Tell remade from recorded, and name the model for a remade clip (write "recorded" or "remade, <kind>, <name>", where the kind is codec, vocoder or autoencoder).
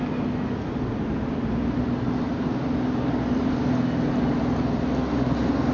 recorded